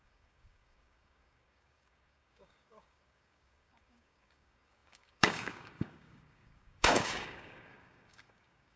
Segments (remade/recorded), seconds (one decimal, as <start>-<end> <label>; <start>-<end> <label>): 0.0-8.8 remade

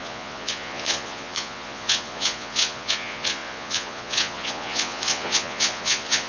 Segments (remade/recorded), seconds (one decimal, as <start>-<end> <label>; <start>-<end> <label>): 0.0-6.3 remade

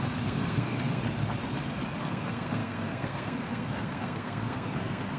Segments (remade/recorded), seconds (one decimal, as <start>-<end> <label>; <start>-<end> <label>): 0.0-1.0 remade; 1.0-2.0 recorded; 2.0-5.2 remade

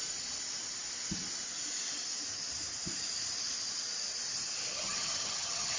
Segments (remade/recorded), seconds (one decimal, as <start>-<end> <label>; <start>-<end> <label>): 0.0-4.7 recorded; 4.7-5.8 remade

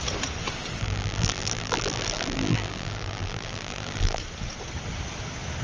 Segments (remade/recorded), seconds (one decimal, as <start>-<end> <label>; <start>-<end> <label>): 0.0-0.8 recorded; 0.8-4.2 remade; 4.2-5.6 recorded

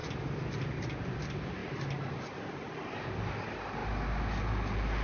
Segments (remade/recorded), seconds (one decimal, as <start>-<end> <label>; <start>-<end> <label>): 0.0-5.0 recorded

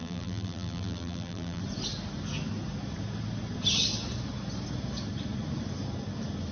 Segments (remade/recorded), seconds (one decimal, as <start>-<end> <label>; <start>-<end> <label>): 0.0-1.6 remade; 1.6-6.5 recorded